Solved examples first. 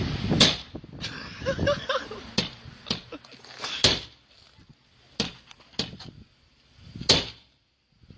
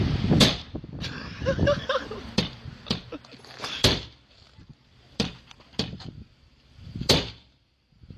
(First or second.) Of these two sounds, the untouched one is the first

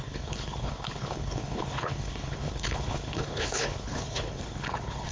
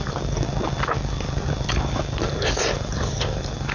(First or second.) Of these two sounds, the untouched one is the second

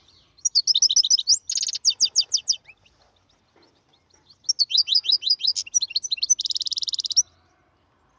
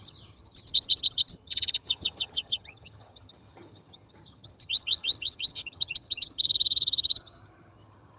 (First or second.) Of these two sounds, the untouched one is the first